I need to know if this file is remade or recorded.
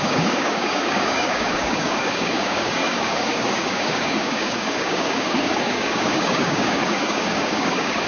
remade